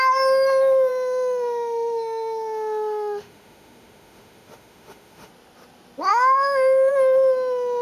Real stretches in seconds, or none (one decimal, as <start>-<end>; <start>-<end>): 0.0-0.9; 5.3-6.1; 6.9-7.8